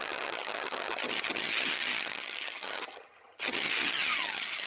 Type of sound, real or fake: fake